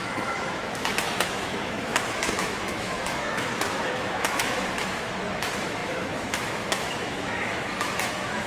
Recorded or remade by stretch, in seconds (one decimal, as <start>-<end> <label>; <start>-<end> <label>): 0.0-8.5 remade